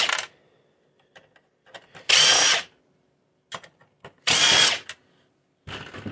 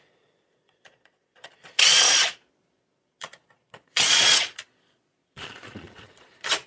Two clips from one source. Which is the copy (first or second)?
second